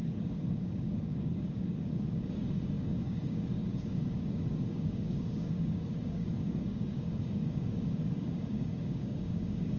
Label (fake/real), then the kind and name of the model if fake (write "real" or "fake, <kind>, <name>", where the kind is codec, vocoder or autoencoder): fake, codec, DAC